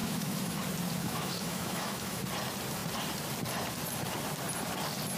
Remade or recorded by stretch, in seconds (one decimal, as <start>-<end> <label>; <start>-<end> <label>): 0.0-0.6 remade; 0.6-1.0 recorded; 1.0-2.2 remade; 2.2-5.2 recorded